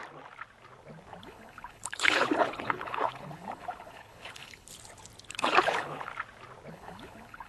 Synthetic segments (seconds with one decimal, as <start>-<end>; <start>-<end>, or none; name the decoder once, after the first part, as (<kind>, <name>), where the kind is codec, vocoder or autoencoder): 1.2-4.7 (codec, HILCodec); 5.3-6.1; 6.7-7.5